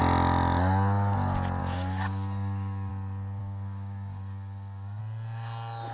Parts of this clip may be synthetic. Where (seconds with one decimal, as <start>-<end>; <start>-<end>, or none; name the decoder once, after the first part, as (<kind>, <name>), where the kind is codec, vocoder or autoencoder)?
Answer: 1.6-2.9 (codec, DAC); 3.4-5.0